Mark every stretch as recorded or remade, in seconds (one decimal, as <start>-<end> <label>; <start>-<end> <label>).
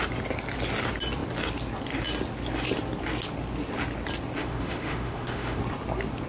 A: 0.0-4.4 recorded; 4.4-5.6 remade; 5.6-6.3 recorded